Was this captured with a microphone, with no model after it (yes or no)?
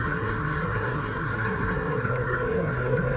no